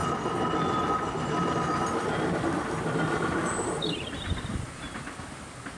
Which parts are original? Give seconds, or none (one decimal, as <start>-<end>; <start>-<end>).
0.0-2.0; 4.5-5.8